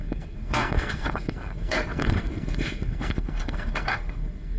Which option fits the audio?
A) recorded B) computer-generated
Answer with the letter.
B